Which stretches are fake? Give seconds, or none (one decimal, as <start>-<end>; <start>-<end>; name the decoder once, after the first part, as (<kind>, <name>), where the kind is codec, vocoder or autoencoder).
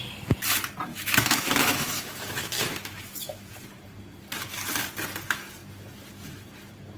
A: 0.9-3.5 (autoencoder, DAC-VAE)